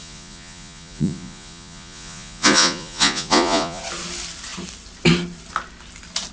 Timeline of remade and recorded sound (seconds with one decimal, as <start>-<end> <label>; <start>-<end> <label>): 0.0-3.8 remade; 3.8-6.3 recorded